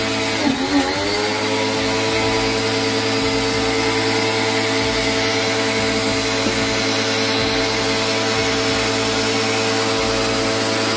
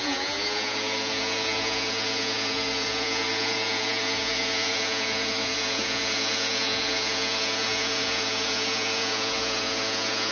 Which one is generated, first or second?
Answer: second